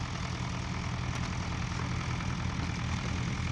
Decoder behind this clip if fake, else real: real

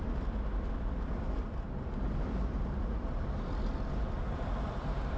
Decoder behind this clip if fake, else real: fake, vocoder, BigVGAN v2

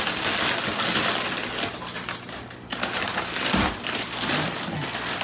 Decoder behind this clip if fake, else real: real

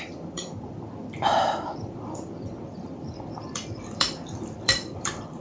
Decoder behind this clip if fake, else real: fake, vocoder, BigVGAN v2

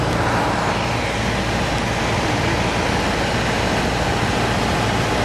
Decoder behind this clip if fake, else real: real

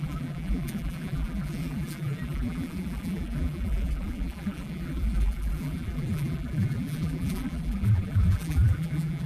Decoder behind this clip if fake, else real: fake, vocoder, BigVGAN v2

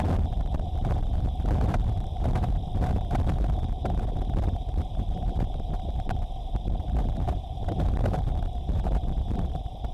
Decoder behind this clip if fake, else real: fake, vocoder, BigVGAN v2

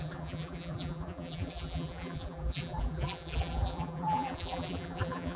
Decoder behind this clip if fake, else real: fake, vocoder, BigVGAN v2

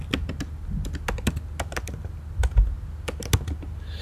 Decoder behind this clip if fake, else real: real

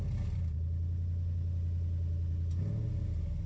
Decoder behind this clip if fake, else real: real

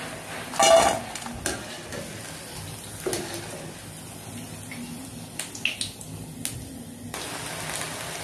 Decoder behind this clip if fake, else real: real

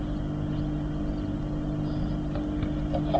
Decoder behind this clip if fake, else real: real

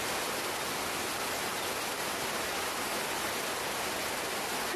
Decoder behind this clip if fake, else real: real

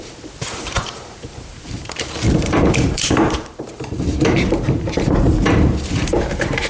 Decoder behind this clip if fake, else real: fake, vocoder, BigVGAN v2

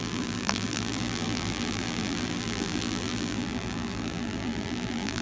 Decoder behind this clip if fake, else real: fake, vocoder, BigVGAN v2